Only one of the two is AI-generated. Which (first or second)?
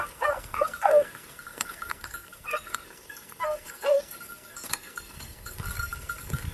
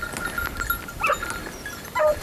first